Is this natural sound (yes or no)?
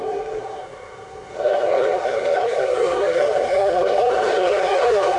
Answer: no